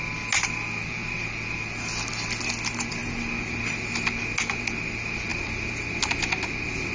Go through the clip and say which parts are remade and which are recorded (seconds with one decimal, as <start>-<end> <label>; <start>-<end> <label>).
0.0-6.9 recorded